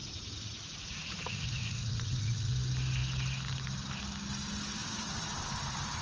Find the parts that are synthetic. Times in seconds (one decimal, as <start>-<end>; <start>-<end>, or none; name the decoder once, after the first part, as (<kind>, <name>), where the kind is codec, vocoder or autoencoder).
0.0-2.5 (vocoder, Vocos); 4.8-5.4